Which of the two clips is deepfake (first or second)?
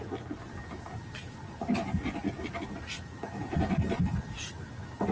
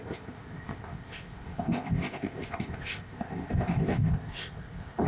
second